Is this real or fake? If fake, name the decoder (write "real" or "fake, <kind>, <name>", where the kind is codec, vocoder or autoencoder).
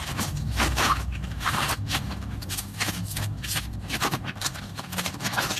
fake, codec, DAC